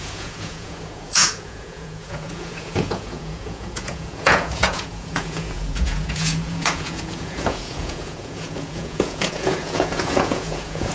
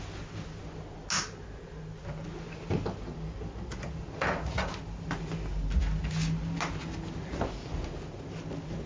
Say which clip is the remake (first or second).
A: first